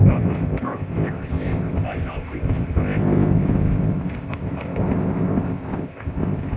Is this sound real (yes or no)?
no